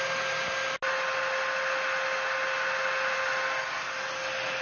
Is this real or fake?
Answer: real